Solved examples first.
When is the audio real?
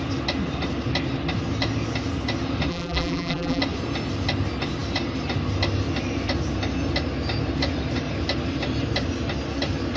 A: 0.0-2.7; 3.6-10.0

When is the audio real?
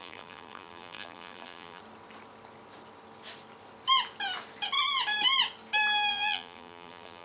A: 1.8-6.1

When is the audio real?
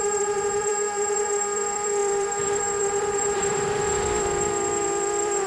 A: none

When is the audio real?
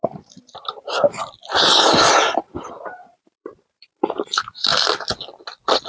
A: 1.2-2.1; 4.7-5.9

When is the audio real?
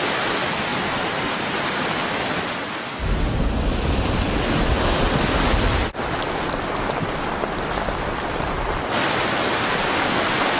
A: 0.0-0.7; 1.2-10.6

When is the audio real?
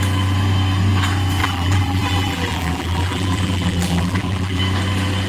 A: 0.0-1.4; 4.6-5.3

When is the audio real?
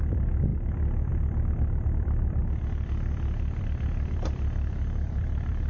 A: 2.4-3.6